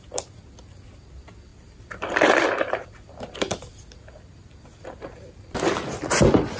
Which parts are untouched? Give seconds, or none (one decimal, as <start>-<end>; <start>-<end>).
0.0-1.5; 2.9-6.6